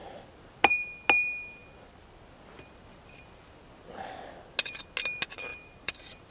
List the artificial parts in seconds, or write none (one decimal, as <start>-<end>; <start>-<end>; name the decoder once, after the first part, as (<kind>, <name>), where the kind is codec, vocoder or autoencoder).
5.5-6.3 (vocoder, BigVGAN v2)